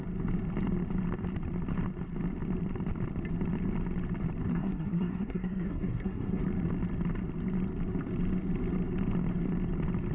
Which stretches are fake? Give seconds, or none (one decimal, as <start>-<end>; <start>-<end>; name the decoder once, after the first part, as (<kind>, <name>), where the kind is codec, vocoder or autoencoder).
4.5-6.4 (codec, SNAC)